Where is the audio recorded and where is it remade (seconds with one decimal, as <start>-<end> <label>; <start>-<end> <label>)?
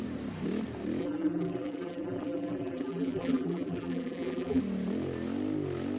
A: 0.0-1.0 recorded; 1.0-4.6 remade; 4.6-6.0 recorded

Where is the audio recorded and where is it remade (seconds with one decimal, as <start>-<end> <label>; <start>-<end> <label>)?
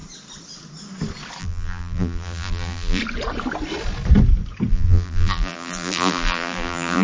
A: 0.0-1.4 recorded; 1.4-3.0 remade; 3.0-4.7 recorded; 4.7-7.0 remade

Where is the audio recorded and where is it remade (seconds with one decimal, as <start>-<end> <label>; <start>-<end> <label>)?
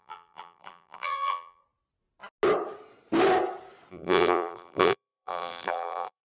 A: 0.0-1.6 remade; 1.6-3.9 recorded; 3.9-6.4 remade